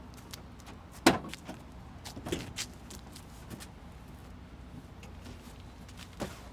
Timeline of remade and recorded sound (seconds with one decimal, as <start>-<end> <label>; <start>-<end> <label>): 0.0-6.5 recorded